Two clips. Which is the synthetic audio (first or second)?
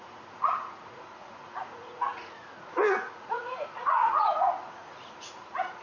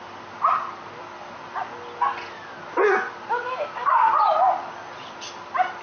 first